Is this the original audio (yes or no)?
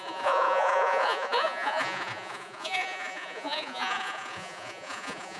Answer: no